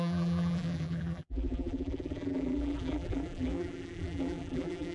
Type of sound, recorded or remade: remade